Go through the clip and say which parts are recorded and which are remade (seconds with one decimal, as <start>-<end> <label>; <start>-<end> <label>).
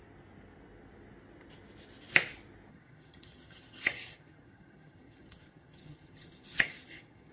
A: 0.0-2.7 recorded; 2.7-7.3 remade